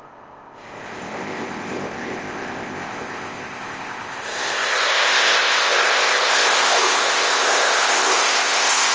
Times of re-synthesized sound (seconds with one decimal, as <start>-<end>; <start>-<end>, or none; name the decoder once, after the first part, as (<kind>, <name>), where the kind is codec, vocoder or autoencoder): 0.0-8.9 (codec, ZipCodec)